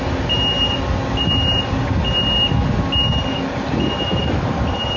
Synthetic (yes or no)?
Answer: no